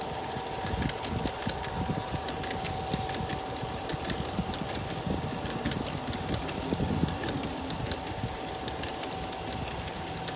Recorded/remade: recorded